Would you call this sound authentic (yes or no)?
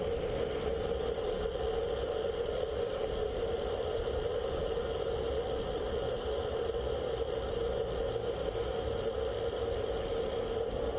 yes